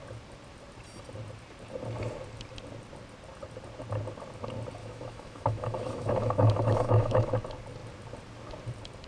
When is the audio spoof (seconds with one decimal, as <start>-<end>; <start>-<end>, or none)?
4.8-7.3